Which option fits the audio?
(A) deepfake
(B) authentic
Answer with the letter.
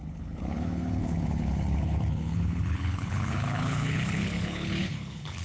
A